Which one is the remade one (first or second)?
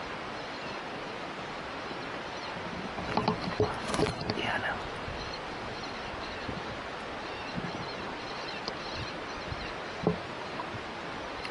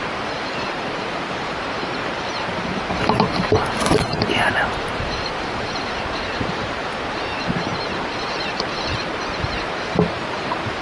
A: second